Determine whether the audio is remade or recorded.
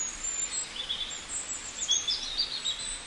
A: recorded